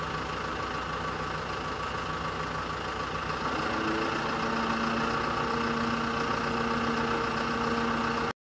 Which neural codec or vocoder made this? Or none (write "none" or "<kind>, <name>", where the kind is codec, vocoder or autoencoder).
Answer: none